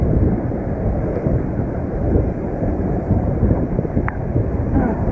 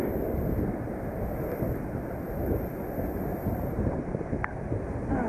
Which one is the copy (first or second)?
first